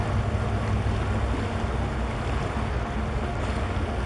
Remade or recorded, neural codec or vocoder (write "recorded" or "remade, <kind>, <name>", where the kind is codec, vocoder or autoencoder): recorded